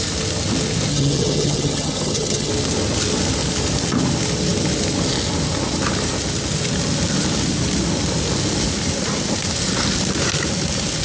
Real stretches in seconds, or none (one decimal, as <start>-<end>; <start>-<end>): 0.0-0.9; 2.5-11.0